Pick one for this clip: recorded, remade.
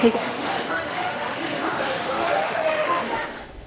remade